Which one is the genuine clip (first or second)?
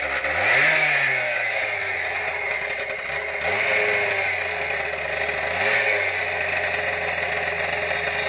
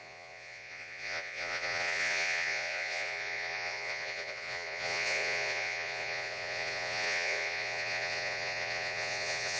first